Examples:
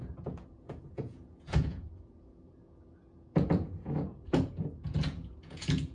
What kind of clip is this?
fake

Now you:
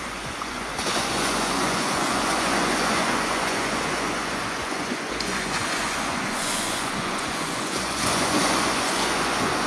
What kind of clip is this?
fake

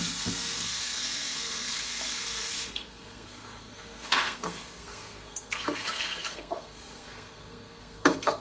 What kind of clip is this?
fake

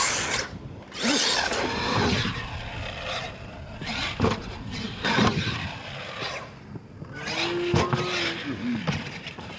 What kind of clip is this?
real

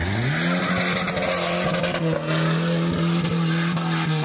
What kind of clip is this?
real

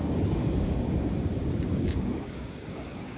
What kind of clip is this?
fake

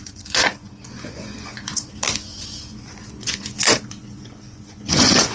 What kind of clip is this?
fake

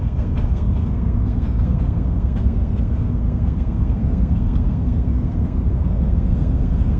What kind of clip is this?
fake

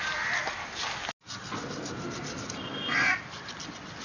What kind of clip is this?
real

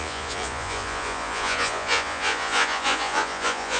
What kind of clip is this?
fake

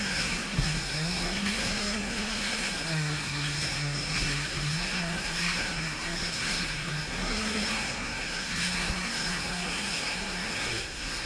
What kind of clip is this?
fake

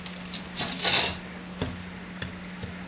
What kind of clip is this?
real